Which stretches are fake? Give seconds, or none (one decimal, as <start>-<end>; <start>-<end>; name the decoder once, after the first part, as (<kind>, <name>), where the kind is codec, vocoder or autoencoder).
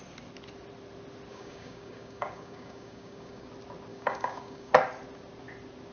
1.3-3.5 (codec, DAC); 3.9-4.7